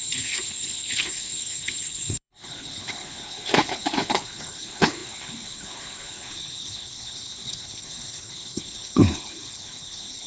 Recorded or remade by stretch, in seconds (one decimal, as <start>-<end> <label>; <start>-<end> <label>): 0.0-10.3 remade